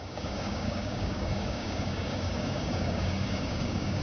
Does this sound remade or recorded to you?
remade